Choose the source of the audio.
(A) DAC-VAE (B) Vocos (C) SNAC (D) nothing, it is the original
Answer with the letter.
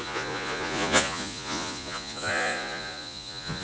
B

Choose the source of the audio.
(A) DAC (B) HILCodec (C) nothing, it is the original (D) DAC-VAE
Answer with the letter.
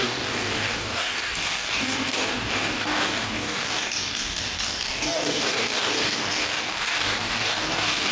A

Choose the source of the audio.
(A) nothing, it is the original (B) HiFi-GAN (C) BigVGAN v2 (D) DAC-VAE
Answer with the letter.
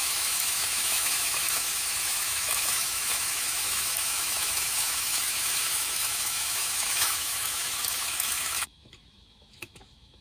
D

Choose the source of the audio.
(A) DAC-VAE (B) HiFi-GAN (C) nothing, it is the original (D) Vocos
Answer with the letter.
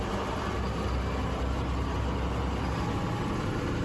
C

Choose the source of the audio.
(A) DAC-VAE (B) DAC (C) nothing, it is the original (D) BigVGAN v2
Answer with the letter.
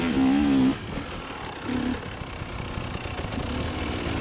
C